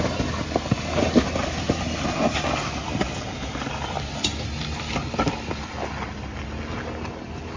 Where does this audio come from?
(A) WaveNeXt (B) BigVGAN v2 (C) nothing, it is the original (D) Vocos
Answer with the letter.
C